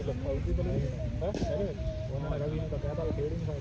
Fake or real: real